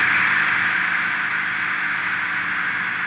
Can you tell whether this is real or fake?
real